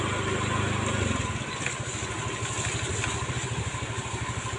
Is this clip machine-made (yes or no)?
no